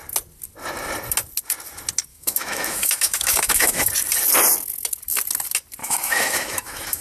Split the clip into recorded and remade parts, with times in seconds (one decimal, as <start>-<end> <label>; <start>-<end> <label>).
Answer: 0.0-2.1 recorded; 2.1-3.9 remade; 3.9-5.8 recorded; 5.8-7.0 remade